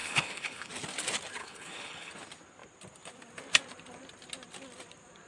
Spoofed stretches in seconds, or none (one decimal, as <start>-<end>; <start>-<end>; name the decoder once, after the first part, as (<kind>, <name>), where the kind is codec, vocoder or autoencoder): 0.0-0.7 (codec, HILCodec); 1.4-2.1